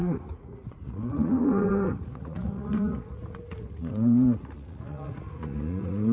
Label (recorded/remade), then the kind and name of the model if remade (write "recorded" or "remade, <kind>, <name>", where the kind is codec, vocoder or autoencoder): remade, vocoder, Vocos